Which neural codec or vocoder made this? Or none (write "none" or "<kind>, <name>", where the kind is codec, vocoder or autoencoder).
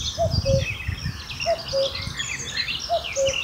none